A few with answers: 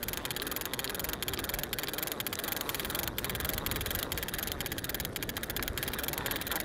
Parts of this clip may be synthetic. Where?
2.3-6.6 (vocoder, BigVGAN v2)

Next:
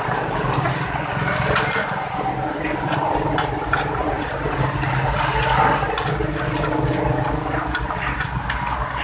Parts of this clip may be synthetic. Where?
1.8-4.9 (vocoder, BigVGAN v2)

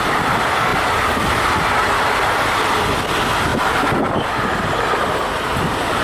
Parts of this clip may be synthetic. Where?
3.5-4.3 (vocoder, BigVGAN v2)

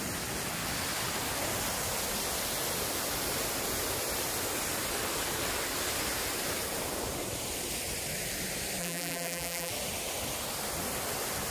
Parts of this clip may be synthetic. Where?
8.8-9.7 (vocoder, BigVGAN v2)